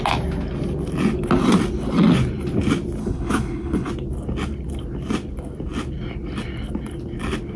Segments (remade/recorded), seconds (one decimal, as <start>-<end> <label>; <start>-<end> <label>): 0.0-3.0 recorded; 3.0-3.9 remade; 3.9-7.6 recorded